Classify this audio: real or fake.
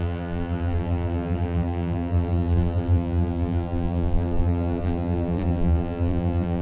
fake